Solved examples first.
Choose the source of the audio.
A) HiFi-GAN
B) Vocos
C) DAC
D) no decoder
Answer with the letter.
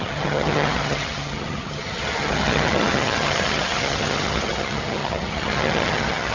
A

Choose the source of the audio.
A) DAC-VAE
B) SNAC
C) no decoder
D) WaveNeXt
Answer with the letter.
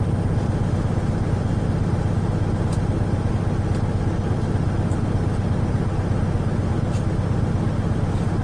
C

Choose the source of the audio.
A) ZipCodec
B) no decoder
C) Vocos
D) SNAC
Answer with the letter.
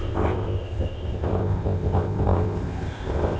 A